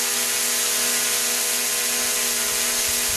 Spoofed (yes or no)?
no